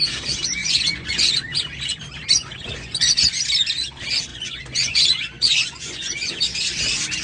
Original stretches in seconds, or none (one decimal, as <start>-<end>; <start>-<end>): 0.0-0.6; 1.3-2.4; 3.4-4.3; 6.4-7.2